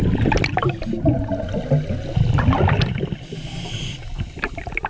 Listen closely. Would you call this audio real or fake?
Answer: real